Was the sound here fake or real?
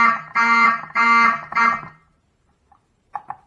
fake